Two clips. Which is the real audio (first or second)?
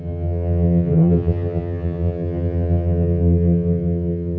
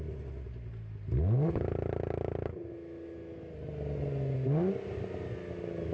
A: second